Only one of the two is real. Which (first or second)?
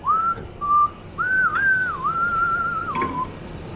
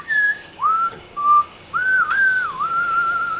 first